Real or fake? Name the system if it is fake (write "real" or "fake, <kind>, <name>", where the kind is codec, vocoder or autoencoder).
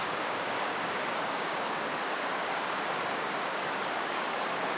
fake, codec, DAC